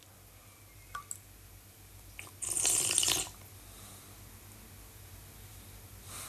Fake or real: real